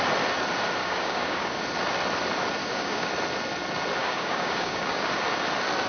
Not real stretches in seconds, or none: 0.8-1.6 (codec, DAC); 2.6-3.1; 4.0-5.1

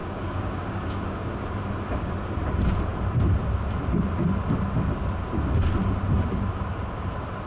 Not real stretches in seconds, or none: 0.0-1.3 (codec, DAC)